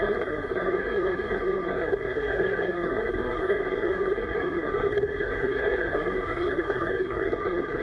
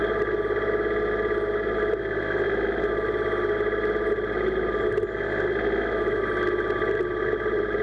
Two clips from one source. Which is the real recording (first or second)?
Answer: second